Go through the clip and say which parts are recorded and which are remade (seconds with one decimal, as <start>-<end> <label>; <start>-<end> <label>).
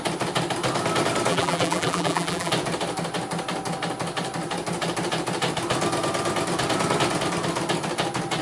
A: 0.0-1.3 recorded; 1.3-2.5 remade; 2.5-8.4 recorded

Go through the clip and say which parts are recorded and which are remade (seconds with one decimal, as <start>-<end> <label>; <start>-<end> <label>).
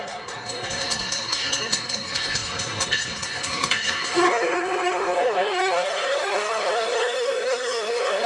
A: 0.0-8.3 remade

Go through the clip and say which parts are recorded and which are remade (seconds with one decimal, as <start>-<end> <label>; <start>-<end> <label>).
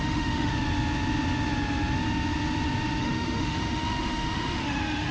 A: 0.0-0.5 remade; 0.5-3.0 recorded; 3.0-5.1 remade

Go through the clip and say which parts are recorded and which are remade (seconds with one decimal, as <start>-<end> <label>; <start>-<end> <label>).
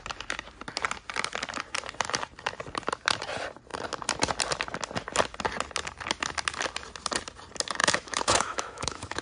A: 0.0-7.8 recorded; 7.8-9.2 remade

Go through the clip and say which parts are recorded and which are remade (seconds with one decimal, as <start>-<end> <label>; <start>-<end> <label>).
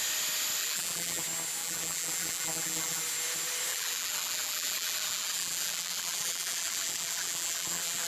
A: 0.0-0.6 recorded; 0.6-1.2 remade; 1.2-1.6 recorded; 1.6-3.0 remade; 3.0-3.7 recorded; 3.7-8.1 remade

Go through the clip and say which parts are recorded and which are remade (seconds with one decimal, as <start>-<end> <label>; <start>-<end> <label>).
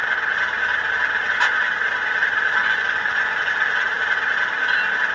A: 0.0-2.6 recorded; 2.6-3.5 remade; 3.5-5.1 recorded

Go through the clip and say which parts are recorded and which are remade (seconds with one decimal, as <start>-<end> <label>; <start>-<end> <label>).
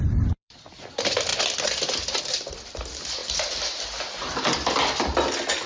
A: 0.0-1.3 remade; 1.3-2.2 recorded; 2.2-5.7 remade